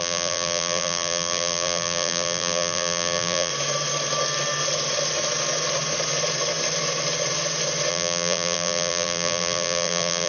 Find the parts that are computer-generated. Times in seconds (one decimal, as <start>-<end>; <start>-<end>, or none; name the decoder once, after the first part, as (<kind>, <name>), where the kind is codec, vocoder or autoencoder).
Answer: 0.0-3.5 (vocoder, BigVGAN v2); 7.9-10.3